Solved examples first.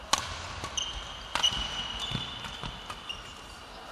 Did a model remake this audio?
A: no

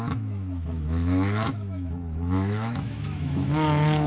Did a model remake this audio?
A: yes